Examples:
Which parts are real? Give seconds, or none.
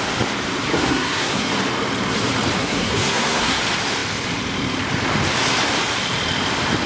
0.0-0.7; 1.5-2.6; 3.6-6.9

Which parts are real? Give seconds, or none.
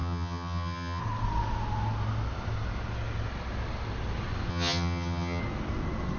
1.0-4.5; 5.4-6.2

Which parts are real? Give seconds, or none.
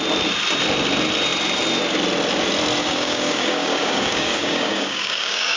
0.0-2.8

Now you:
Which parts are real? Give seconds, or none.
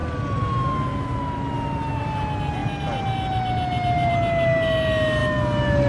0.0-5.9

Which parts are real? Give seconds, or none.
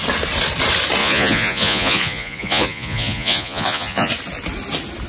0.0-1.0; 4.1-5.1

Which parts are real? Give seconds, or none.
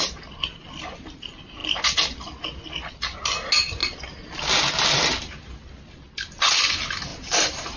0.0-7.1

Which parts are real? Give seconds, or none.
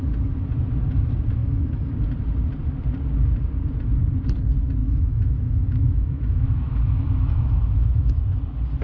0.0-1.4; 1.9-4.8; 8.2-8.8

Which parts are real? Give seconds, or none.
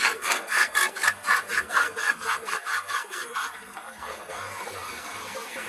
none